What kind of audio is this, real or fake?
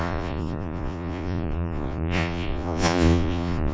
fake